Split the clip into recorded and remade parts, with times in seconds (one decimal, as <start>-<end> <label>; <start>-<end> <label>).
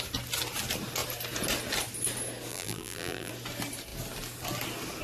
0.0-2.5 recorded; 2.5-3.3 remade; 3.3-5.0 recorded